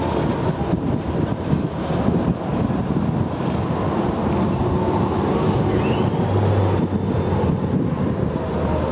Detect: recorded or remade recorded